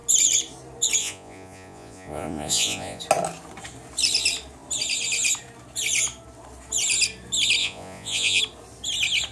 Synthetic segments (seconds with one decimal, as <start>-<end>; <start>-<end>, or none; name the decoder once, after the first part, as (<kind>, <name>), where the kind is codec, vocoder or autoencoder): 1.0-3.0 (vocoder, Vocos); 7.6-8.4